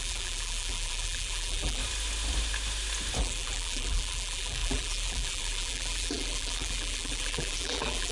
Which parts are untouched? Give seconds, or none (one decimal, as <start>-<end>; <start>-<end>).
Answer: 1.8-3.2